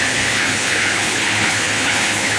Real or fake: fake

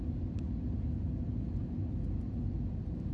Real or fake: real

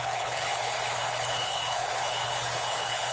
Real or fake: fake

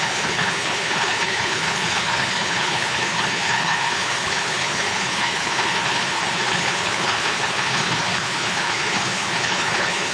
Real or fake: fake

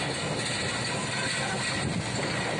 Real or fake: real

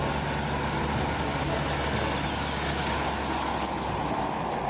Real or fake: real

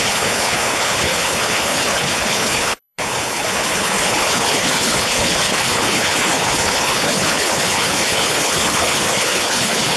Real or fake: fake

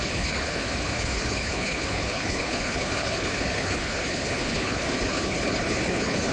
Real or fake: fake